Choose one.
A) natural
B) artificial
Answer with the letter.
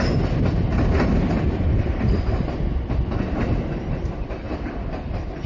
A